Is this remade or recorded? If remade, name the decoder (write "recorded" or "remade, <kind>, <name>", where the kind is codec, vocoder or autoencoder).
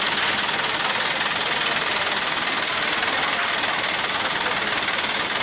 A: recorded